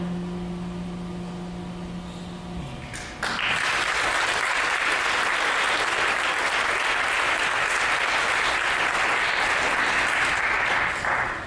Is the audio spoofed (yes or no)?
no